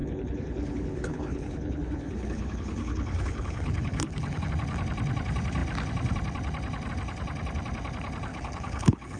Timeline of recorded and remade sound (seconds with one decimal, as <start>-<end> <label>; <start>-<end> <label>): 0.0-4.5 remade; 4.5-8.3 recorded; 8.3-9.2 remade